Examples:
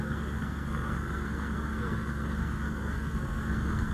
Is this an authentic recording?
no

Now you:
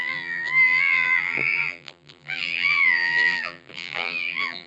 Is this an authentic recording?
no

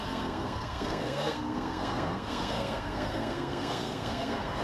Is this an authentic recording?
no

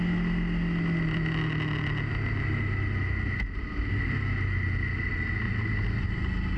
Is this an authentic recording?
yes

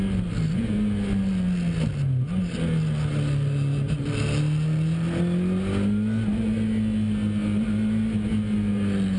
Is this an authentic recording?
yes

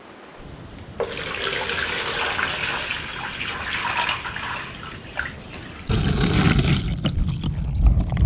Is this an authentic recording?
yes